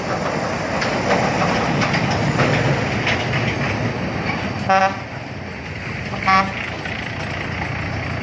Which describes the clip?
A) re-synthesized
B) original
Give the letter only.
B